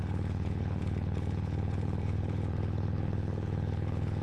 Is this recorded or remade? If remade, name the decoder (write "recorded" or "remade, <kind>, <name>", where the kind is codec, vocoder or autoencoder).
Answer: remade, codec, HILCodec